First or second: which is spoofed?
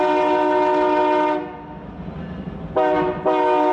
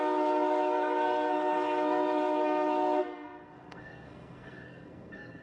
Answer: second